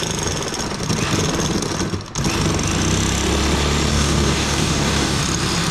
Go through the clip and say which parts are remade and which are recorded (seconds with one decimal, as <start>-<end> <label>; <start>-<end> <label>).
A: 0.0-3.9 recorded; 3.9-5.2 remade; 5.2-5.7 recorded